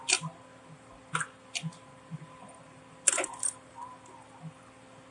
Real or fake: real